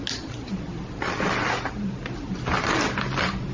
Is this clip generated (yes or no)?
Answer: no